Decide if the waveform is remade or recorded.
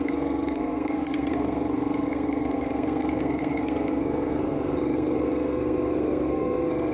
remade